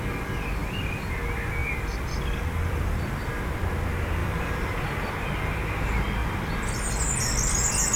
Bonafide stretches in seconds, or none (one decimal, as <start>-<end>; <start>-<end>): 0.0-0.6; 1.2-1.6; 3.4-4.2; 5.1-6.2; 7.0-8.0